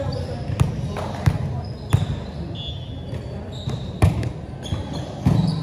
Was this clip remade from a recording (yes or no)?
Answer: no